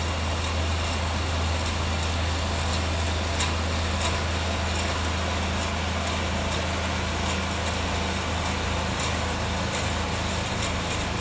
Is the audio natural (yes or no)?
yes